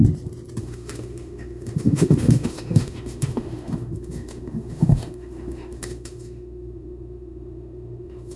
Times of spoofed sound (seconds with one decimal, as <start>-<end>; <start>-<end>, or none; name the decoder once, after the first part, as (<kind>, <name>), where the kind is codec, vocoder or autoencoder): 0.6-8.4 (autoencoder, DAC-VAE)